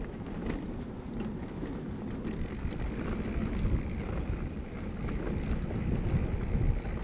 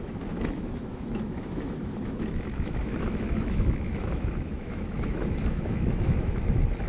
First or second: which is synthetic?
second